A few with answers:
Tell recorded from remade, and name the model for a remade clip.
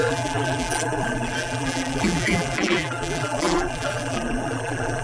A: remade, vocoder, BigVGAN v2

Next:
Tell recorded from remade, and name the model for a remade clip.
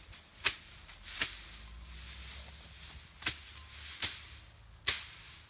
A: recorded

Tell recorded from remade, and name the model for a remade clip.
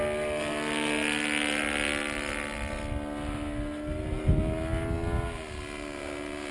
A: recorded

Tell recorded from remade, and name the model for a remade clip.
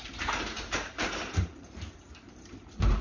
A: remade, vocoder, BigVGAN v2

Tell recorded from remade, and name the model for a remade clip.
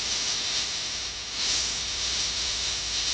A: recorded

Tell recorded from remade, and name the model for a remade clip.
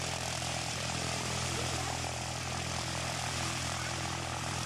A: remade, vocoder, BigVGAN v2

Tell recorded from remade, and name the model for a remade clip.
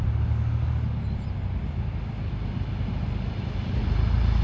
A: recorded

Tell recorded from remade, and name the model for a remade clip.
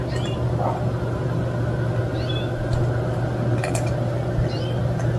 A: recorded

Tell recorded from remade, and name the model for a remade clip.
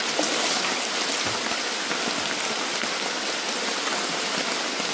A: recorded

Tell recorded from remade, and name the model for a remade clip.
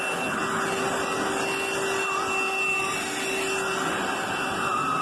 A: recorded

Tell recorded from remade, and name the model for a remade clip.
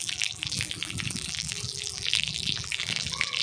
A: remade, vocoder, BigVGAN v2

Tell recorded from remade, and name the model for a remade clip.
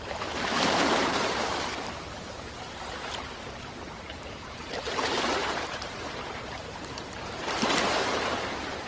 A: remade, vocoder, BigVGAN v2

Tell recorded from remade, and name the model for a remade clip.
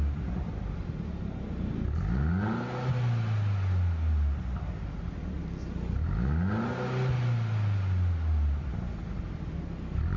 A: recorded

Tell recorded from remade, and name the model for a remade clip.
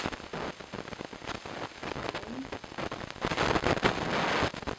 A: recorded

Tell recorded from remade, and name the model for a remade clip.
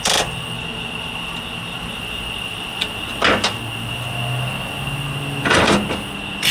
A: recorded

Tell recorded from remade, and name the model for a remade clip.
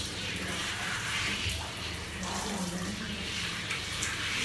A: remade, vocoder, BigVGAN v2